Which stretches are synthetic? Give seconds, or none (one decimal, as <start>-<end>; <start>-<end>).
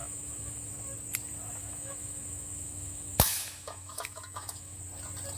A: 0.0-0.7; 1.6-4.8